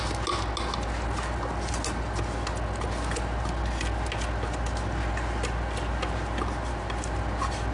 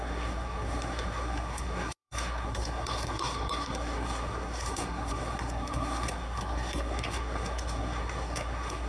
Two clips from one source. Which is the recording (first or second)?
first